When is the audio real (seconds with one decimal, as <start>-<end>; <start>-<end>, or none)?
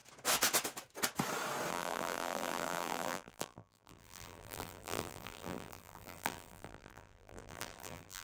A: 0.0-1.7